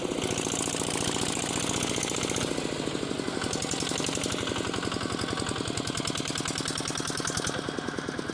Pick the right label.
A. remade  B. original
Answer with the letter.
B